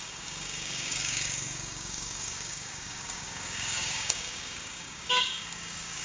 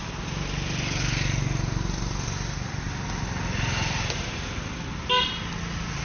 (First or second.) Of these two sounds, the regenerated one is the first